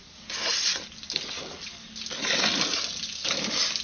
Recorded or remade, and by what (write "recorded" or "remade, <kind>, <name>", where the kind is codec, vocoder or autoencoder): recorded